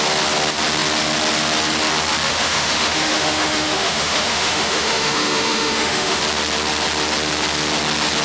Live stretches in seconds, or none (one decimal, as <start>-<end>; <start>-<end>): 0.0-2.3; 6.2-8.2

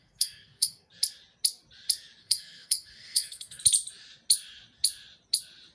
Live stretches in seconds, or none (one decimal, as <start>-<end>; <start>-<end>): 0.9-2.2; 3.6-5.7

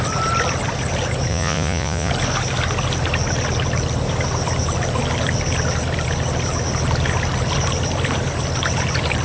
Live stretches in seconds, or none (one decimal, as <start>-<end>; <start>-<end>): 0.0-1.3; 2.1-9.2

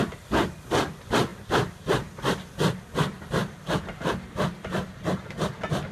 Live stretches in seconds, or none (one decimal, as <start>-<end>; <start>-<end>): 0.0-5.9